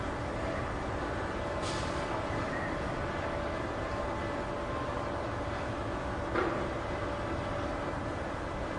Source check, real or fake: real